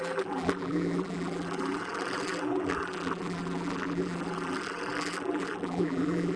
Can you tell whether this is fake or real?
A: fake